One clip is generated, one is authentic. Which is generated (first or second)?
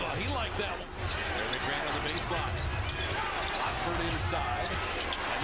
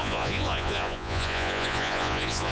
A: second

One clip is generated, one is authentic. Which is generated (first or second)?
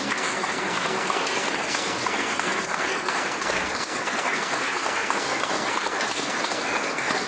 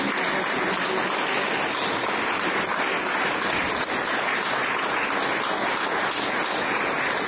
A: first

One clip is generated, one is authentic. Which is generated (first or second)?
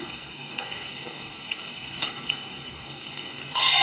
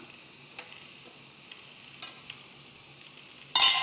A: first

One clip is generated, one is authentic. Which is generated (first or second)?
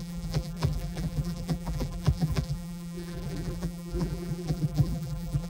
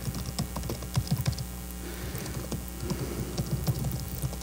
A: first